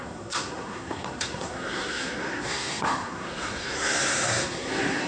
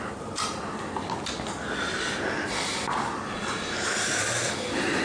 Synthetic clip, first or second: first